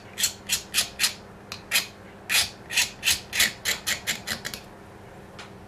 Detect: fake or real real